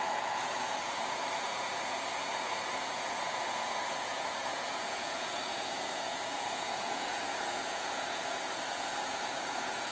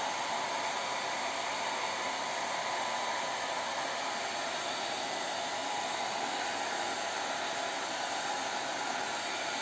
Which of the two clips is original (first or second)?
second